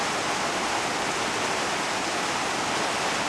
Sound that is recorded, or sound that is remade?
recorded